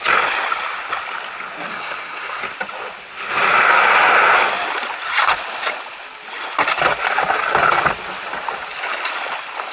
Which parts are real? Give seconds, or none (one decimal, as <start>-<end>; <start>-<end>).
0.0-1.7; 2.4-9.7